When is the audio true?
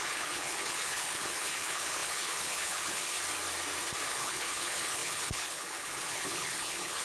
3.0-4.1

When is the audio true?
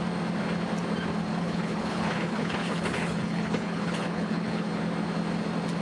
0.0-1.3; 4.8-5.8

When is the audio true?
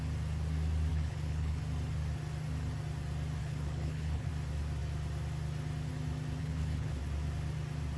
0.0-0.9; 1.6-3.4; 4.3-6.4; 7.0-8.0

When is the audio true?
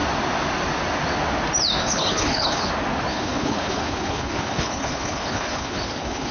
0.0-1.8; 2.7-3.1